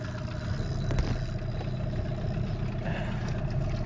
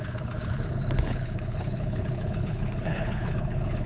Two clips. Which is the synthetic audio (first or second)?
second